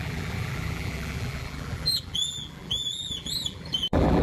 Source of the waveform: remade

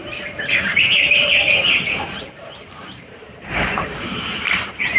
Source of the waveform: remade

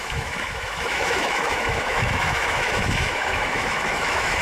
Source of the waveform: remade